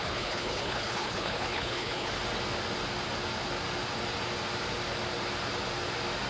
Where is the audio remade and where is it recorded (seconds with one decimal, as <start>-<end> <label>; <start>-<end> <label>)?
0.0-2.1 remade; 2.1-6.3 recorded